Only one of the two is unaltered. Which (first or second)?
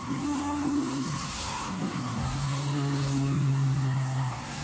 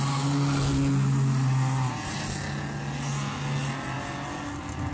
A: second